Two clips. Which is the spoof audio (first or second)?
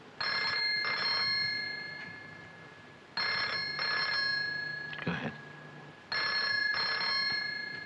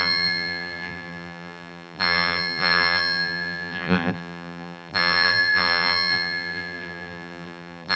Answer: second